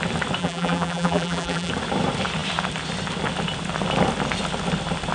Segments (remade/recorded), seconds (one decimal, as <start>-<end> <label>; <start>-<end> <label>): 0.0-0.4 recorded; 0.4-1.7 remade; 1.7-5.1 recorded

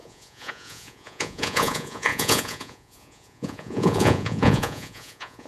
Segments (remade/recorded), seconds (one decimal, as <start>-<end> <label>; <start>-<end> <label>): 0.0-5.5 remade